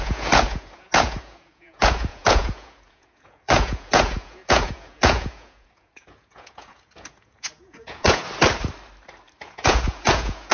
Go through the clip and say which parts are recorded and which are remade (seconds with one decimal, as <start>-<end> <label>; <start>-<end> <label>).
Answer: 0.0-8.2 remade; 8.2-9.4 recorded; 9.4-10.5 remade